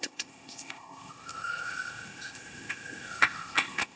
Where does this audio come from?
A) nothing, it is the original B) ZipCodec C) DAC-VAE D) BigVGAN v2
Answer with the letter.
B